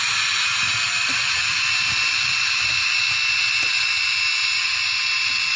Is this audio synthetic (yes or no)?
no